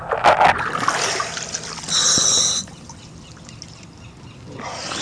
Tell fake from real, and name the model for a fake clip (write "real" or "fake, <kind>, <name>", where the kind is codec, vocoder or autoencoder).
real